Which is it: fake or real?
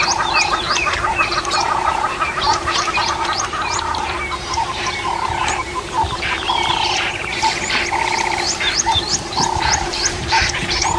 fake